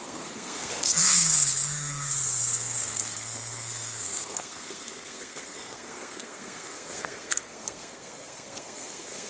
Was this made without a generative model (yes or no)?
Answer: no